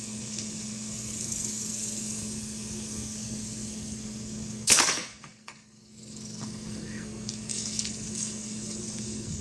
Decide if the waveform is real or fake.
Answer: fake